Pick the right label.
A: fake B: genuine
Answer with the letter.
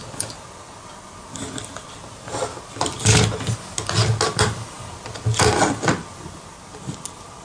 B